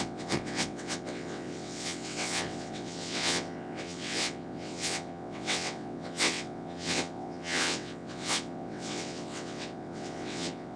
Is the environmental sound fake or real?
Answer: fake